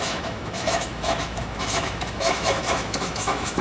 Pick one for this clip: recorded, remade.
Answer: remade